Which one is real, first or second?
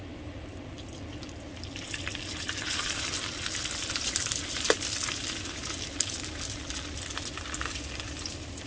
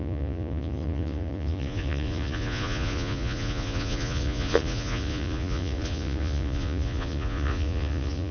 first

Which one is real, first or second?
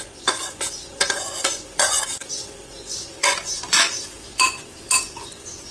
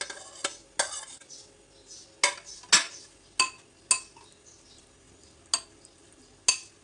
second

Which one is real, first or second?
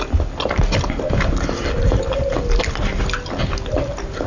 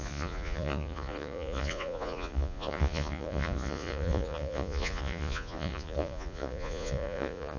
first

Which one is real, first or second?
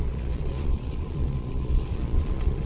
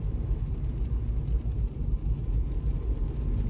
second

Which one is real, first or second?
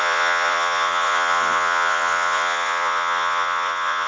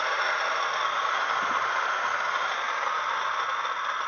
second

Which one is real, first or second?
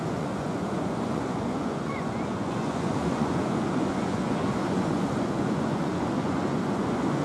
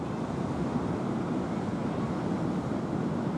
second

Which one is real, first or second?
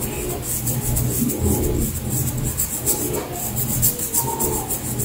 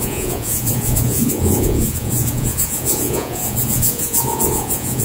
first